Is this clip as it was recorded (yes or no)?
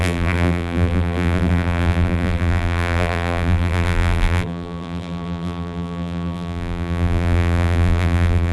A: no